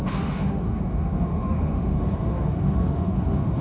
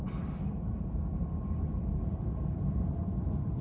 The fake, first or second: first